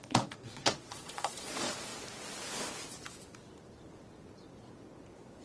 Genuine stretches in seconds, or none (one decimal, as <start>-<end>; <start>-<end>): 1.9-5.4